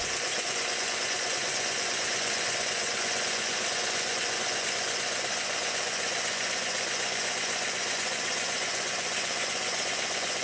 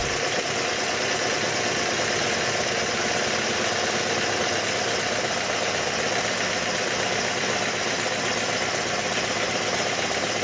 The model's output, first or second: first